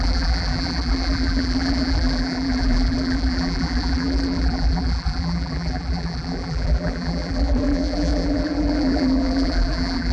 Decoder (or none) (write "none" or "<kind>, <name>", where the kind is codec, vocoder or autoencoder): vocoder, BigVGAN v2